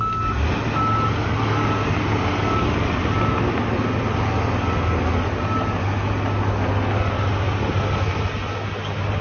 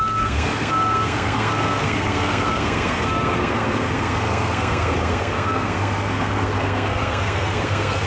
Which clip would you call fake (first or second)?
second